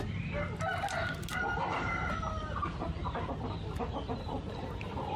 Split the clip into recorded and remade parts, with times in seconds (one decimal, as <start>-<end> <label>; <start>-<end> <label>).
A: 0.0-5.2 recorded